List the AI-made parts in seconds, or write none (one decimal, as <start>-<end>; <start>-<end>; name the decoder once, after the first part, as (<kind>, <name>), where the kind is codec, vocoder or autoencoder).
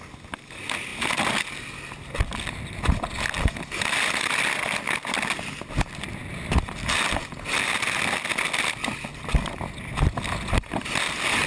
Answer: none